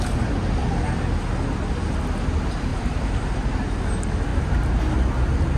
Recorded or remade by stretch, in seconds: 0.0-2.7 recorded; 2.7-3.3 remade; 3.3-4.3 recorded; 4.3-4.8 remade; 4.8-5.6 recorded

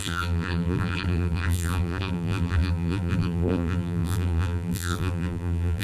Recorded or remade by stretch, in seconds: 0.0-5.8 remade